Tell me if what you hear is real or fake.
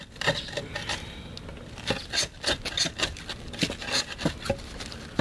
real